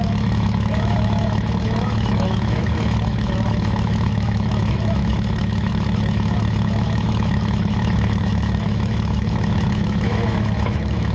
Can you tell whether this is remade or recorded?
remade